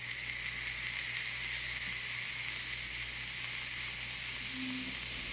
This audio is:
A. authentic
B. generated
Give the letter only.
A